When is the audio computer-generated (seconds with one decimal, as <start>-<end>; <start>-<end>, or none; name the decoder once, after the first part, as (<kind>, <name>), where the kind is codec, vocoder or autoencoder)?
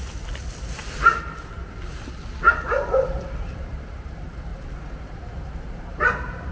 4.5-6.5 (vocoder, BigVGAN v2)